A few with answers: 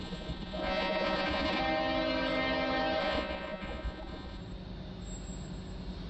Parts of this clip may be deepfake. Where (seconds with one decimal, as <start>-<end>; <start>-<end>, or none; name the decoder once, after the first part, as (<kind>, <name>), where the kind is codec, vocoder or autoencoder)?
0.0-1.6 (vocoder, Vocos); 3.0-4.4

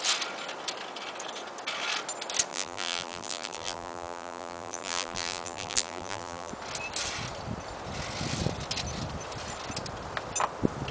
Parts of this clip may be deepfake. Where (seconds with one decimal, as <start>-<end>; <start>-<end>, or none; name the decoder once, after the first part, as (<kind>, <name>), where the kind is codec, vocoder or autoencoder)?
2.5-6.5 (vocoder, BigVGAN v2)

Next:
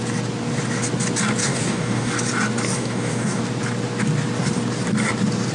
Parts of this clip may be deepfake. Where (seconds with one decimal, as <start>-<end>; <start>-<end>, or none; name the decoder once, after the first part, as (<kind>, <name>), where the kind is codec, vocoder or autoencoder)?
1.4-2.1 (codec, DAC); 2.8-3.4